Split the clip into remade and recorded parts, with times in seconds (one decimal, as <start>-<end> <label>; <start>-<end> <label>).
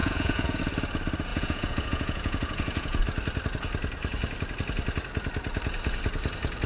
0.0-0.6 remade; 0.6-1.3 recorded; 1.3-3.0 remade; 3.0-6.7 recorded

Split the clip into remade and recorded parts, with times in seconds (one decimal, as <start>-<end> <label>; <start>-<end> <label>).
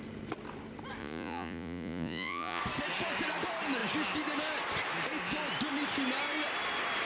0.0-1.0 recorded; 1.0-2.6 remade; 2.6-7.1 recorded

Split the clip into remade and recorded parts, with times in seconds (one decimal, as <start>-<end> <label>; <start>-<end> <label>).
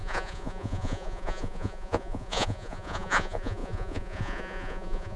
0.0-5.2 remade